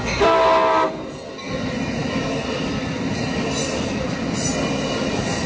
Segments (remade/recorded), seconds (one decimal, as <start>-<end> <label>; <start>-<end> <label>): 0.0-5.5 recorded